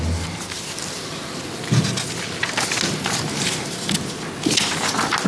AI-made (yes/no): no